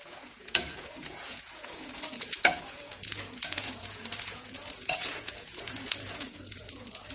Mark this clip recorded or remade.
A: remade